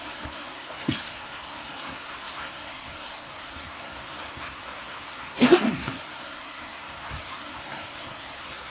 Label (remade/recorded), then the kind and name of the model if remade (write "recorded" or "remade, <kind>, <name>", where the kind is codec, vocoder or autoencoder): remade, codec, SNAC